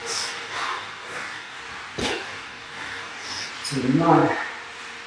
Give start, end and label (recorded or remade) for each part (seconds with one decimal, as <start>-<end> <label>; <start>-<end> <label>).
0.0-1.6 remade; 1.6-2.0 recorded; 2.0-3.5 remade; 3.5-5.1 recorded